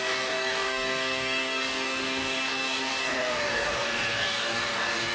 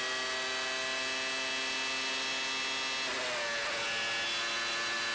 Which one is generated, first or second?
first